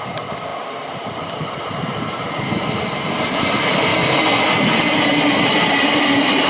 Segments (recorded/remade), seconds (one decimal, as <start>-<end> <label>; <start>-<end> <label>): 0.0-3.9 remade; 3.9-5.3 recorded; 5.3-6.5 remade